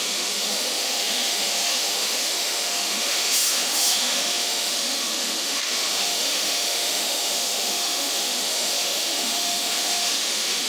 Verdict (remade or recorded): remade